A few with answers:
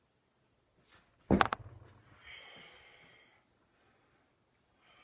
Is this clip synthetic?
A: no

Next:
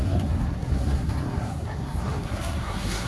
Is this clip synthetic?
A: yes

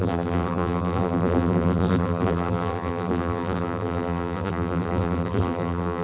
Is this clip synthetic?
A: yes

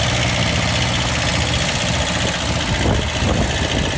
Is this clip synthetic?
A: no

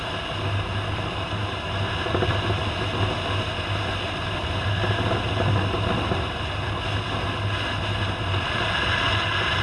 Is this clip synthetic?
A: no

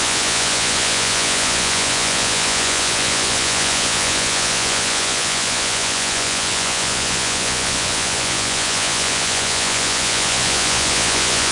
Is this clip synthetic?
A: yes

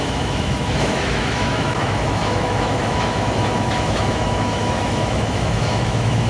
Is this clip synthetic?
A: yes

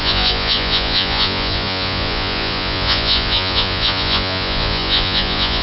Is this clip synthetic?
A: yes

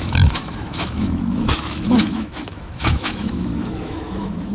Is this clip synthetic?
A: yes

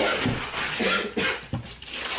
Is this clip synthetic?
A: no